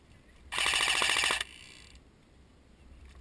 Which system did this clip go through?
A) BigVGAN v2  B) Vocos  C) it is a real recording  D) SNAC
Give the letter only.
C